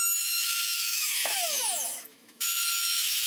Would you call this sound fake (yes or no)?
yes